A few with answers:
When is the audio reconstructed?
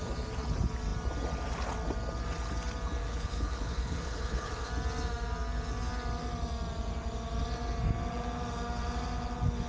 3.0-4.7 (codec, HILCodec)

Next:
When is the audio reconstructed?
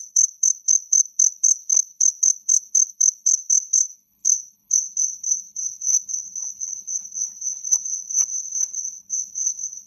0.0-9.9 (codec, HILCodec)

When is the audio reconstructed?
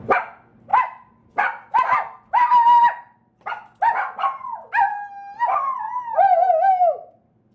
none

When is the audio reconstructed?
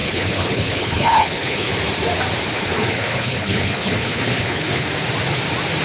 0.0-1.7 (codec, HILCodec); 2.5-4.9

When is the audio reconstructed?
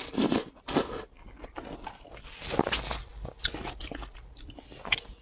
none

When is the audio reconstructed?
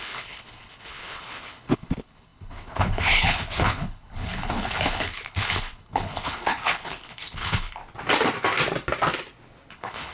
0.0-7.8 (codec, HILCodec); 9.7-10.1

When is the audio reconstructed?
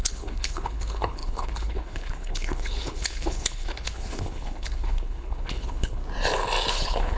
0.0-6.0 (codec, HILCodec); 6.7-7.2